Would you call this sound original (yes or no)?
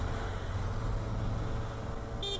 yes